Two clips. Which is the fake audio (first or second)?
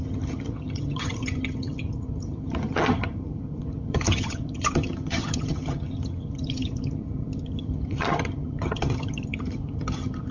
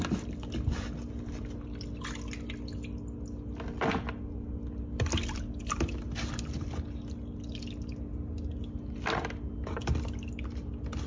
first